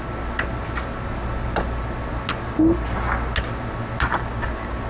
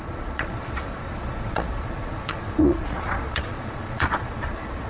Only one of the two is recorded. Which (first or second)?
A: first